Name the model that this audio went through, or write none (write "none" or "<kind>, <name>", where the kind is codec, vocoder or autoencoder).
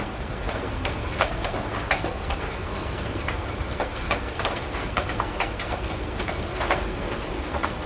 codec, SNAC